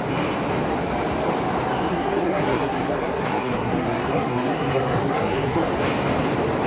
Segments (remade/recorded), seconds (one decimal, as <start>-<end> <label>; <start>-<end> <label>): 0.0-1.9 recorded; 1.9-5.7 remade; 5.7-6.7 recorded